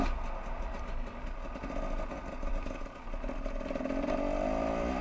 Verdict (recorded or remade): recorded